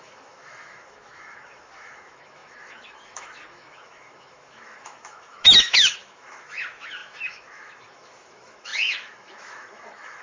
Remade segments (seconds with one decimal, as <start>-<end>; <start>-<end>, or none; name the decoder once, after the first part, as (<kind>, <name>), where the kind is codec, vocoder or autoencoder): 0.0-10.2 (autoencoder, DAC-VAE)